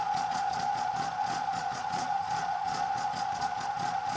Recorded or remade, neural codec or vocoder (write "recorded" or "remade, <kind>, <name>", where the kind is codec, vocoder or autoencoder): remade, vocoder, Vocos